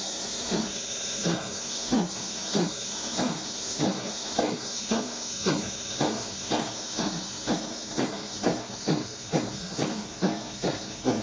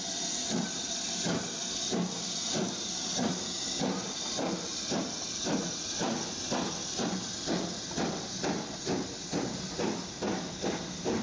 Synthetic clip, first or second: first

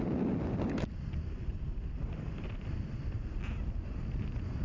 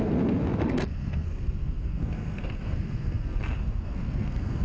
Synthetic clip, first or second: second